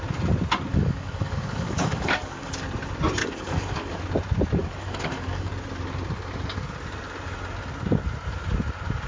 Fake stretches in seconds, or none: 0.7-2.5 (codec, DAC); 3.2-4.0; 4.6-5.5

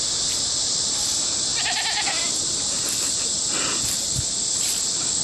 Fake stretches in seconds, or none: 0.0-1.5 (vocoder, BigVGAN v2); 4.6-5.2

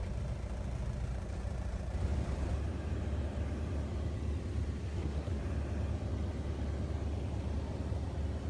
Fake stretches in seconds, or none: 4.8-5.4 (codec, SNAC)

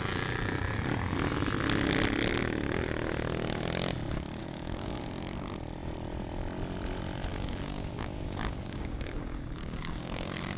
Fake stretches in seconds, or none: 4.4-5.0 (codec, DAC); 7.3-10.6

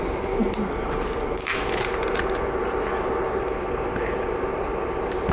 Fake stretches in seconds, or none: 0.0-5.3 (vocoder, BigVGAN v2)

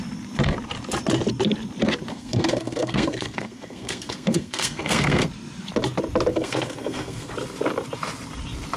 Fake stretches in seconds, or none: 2.1-5.3 (codec, SNAC); 6.3-7.3

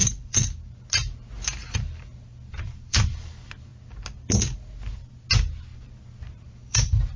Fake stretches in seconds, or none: 0.0-0.7 (vocoder, BigVGAN v2); 1.6-3.3; 5.7-7.2

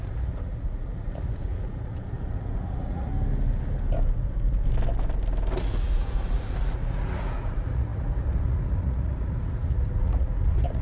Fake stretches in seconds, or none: 0.0-3.1 (vocoder, Vocos); 5.6-10.8